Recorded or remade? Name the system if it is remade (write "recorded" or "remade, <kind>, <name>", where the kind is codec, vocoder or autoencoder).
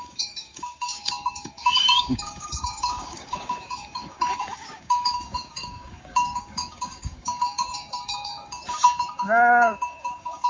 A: remade, codec, DAC